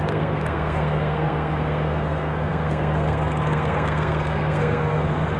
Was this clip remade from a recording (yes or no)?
yes